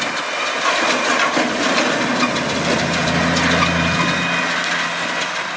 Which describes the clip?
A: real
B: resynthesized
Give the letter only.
A